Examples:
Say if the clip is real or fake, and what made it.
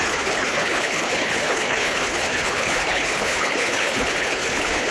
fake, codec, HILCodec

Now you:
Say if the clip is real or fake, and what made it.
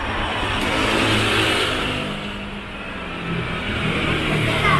real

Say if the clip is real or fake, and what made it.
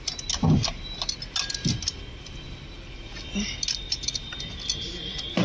real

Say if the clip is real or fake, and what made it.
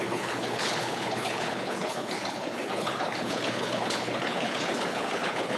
fake, codec, HILCodec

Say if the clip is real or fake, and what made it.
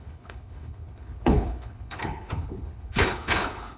fake, codec, HILCodec